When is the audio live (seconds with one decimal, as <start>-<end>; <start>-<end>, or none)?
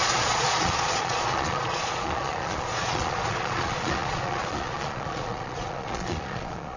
none